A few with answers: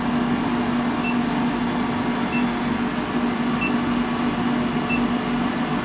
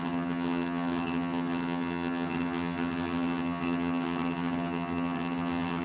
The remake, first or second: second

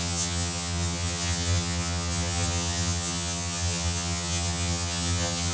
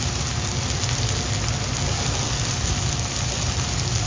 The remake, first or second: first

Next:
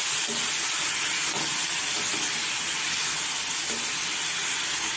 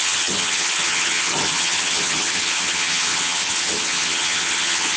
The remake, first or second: second